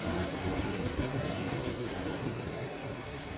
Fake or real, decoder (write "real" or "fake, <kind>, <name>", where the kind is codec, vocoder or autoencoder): fake, codec, SNAC